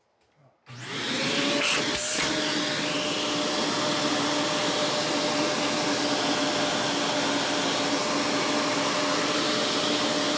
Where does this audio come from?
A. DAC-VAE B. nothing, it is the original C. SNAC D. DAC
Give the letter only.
B